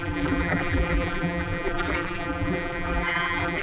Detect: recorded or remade remade